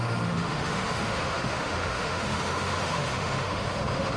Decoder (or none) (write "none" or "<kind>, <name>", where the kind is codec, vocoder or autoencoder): autoencoder, DAC-VAE